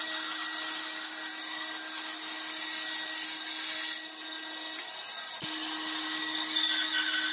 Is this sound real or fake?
real